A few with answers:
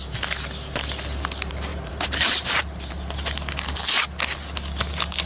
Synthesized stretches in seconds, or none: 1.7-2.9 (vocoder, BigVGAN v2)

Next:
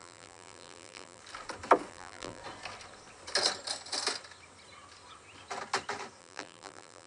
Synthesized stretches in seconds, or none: 0.0-1.2 (vocoder, BigVGAN v2); 1.9-2.4; 6.2-7.1

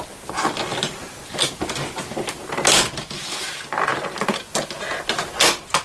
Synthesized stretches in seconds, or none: none

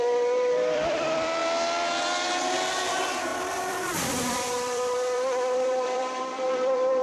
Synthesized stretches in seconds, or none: 0.0-1.4 (vocoder, BigVGAN v2); 2.7-7.0

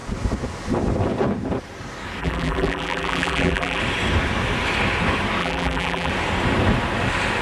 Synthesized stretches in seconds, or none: 2.2-3.8 (vocoder, BigVGAN v2); 5.4-6.1

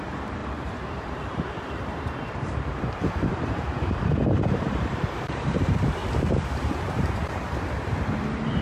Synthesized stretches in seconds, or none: 0.0-6.0 (vocoder, BigVGAN v2); 6.9-8.6